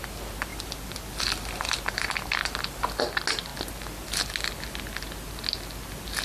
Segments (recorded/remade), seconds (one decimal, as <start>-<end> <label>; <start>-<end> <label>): 0.0-0.5 recorded; 0.5-3.0 remade; 3.0-6.2 recorded